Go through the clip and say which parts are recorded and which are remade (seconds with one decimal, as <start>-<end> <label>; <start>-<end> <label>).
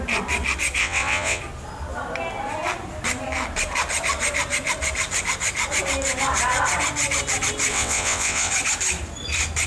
0.0-0.8 recorded; 0.8-1.4 remade; 1.4-7.7 recorded; 7.7-8.5 remade; 8.5-9.7 recorded